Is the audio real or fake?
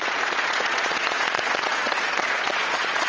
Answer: fake